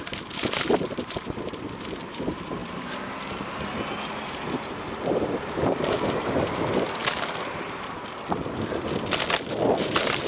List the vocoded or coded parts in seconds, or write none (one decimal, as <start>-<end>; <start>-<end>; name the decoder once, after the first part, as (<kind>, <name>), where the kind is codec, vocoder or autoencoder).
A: 0.0-2.6 (vocoder, BigVGAN v2); 6.2-7.0; 9.8-10.3